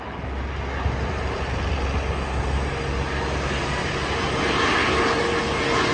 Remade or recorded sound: recorded